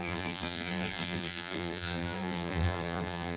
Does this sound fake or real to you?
fake